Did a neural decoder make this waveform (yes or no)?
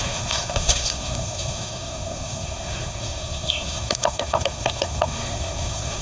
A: yes